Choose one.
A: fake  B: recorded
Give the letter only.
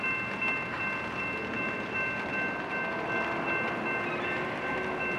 B